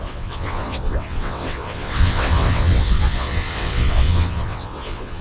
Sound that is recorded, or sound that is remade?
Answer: remade